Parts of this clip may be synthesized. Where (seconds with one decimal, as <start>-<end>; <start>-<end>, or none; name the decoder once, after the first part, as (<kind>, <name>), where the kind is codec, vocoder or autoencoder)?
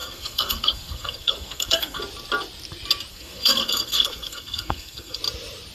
0.0-2.0 (codec, SNAC); 3.1-5.2